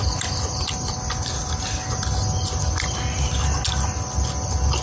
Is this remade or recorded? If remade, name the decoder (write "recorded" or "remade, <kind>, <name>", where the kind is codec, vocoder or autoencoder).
recorded